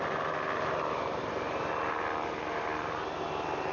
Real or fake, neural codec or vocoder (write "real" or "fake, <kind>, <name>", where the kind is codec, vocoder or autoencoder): real